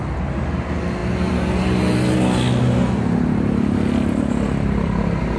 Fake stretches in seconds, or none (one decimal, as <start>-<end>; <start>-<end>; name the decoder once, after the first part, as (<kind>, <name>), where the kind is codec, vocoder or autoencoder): none